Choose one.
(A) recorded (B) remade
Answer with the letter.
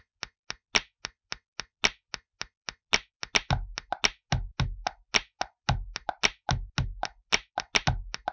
A